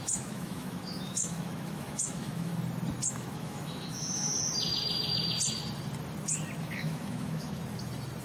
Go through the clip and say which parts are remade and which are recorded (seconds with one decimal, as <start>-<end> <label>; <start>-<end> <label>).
0.0-2.5 remade; 2.5-3.1 recorded; 3.1-4.3 remade; 4.3-6.6 recorded; 6.6-7.6 remade; 7.6-8.2 recorded